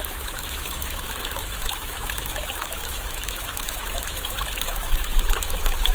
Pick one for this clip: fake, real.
fake